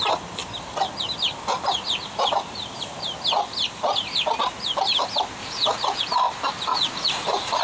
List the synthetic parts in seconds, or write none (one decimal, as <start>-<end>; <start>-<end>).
5.4-6.0; 6.7-7.6